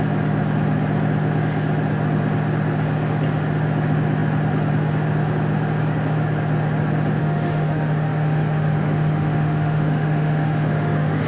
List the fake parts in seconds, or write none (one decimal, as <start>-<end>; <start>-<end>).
7.2-11.3